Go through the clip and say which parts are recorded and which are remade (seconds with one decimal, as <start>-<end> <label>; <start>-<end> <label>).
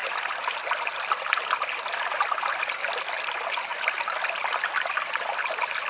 0.0-2.8 remade; 2.8-3.7 recorded; 3.7-4.6 remade; 4.6-5.9 recorded